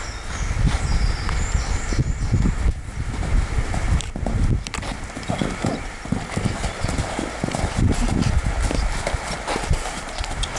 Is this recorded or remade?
recorded